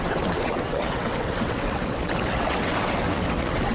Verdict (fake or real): fake